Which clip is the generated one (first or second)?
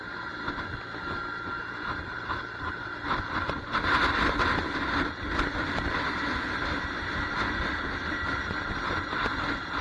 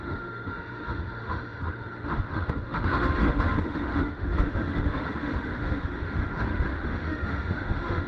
second